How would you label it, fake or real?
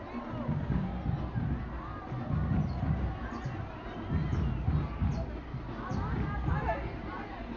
real